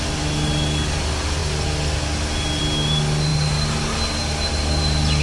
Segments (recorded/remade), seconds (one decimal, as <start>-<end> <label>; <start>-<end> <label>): 0.0-5.2 recorded